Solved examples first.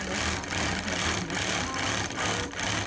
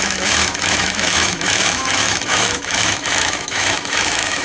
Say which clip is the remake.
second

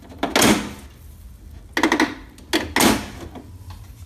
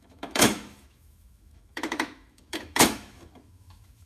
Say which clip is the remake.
second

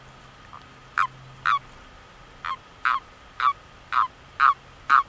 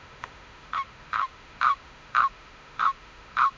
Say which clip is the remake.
second